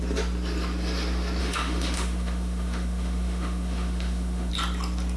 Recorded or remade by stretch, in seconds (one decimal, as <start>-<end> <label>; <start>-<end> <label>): 0.0-1.4 recorded; 1.4-4.5 remade; 4.5-5.2 recorded